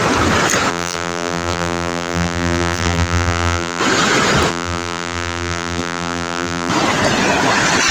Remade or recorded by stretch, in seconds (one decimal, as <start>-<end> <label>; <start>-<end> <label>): 0.0-0.7 recorded; 0.7-3.8 remade; 3.8-4.5 recorded; 4.5-6.7 remade; 6.7-7.9 recorded